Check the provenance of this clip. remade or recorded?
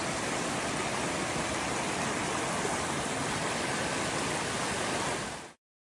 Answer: recorded